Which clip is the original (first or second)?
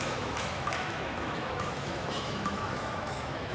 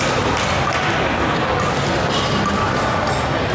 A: second